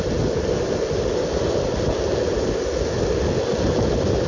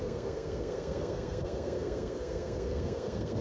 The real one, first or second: first